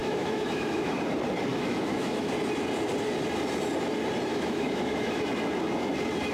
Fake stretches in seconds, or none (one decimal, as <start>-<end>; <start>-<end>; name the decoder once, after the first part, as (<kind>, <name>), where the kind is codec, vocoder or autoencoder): 0.0-1.0 (autoencoder, DAC-VAE); 1.5-2.3; 4.3-5.2